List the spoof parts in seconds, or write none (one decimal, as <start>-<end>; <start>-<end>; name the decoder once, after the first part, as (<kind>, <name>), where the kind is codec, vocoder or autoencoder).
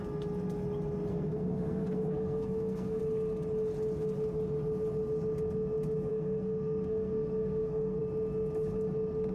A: 1.1-3.0 (codec, SNAC); 6.1-8.0